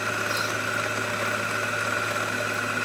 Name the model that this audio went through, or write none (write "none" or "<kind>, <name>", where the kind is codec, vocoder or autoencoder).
none